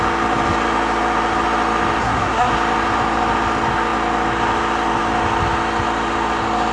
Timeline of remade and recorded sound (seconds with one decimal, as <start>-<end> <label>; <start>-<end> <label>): 0.0-2.0 recorded; 2.0-2.5 remade; 2.5-6.7 recorded